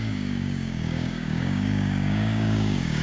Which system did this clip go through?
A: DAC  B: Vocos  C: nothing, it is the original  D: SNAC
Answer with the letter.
A